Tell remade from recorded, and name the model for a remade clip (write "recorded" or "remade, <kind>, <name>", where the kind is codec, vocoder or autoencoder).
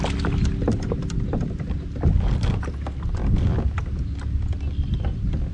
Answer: recorded